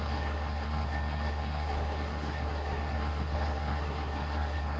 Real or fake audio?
fake